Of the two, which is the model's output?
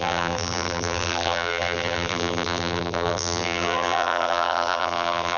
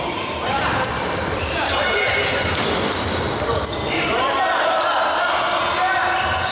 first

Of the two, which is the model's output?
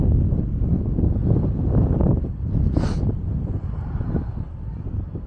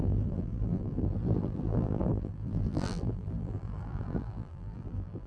second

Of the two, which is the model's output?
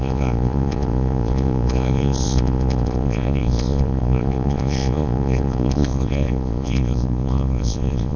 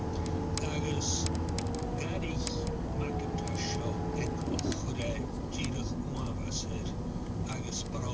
first